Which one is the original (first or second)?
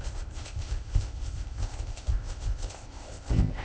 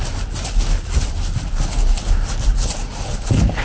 second